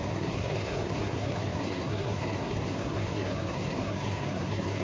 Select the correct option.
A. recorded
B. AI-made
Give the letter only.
B